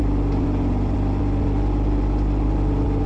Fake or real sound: real